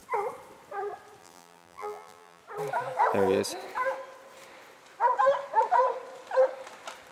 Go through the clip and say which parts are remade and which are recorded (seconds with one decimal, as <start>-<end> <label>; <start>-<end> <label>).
0.0-1.2 recorded; 1.2-2.4 remade; 2.4-7.1 recorded